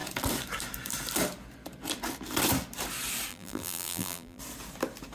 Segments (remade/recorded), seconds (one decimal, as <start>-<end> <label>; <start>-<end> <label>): 0.0-3.3 recorded; 3.3-4.4 remade; 4.4-5.1 recorded